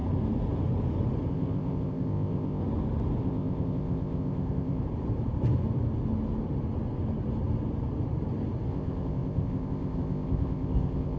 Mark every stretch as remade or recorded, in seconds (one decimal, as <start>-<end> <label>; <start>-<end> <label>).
0.0-1.3 recorded; 1.3-2.6 remade; 2.6-3.2 recorded; 3.2-4.8 remade; 4.8-8.7 recorded; 8.7-11.2 remade